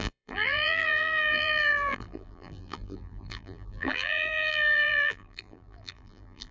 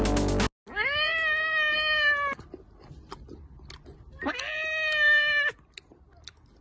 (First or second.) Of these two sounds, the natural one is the second